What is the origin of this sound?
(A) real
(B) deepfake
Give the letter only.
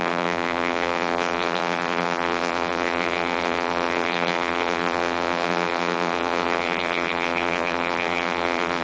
B